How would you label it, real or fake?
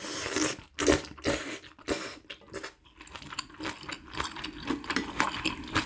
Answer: real